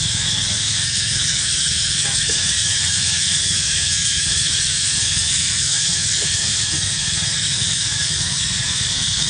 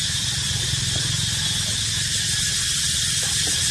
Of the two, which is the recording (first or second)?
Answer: second